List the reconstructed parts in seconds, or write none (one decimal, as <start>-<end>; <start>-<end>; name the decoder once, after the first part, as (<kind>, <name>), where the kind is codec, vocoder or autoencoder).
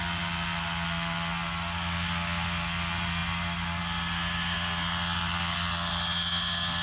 none